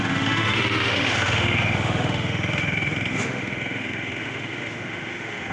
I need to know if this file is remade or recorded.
remade